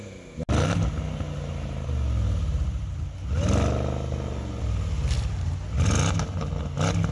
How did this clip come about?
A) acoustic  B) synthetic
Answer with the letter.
A